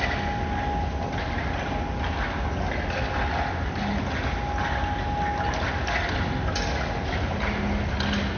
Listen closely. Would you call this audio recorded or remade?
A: recorded